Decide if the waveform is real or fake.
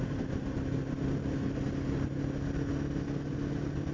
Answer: real